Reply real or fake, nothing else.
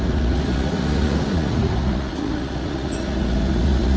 fake